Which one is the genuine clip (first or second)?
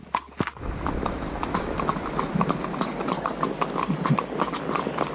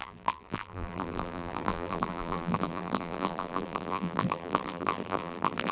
first